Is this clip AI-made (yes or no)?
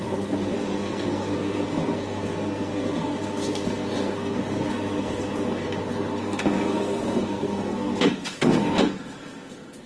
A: yes